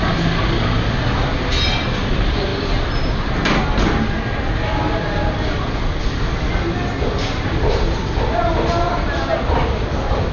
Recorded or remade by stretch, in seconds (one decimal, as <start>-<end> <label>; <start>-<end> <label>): 0.0-10.3 recorded